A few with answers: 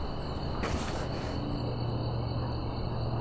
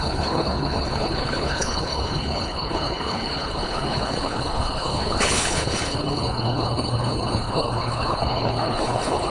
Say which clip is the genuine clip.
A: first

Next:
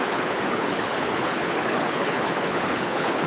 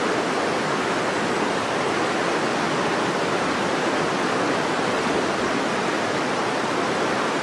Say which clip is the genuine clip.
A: second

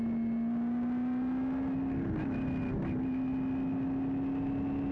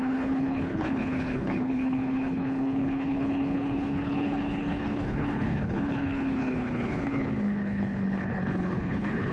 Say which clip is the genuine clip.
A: first